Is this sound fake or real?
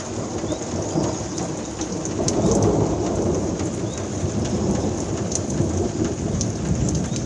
real